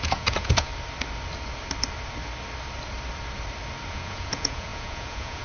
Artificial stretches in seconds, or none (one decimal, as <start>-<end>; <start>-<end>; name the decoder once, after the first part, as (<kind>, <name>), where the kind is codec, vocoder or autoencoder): 0.0-0.7 (vocoder, Vocos); 3.9-5.4